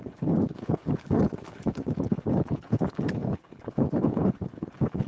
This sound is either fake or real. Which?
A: fake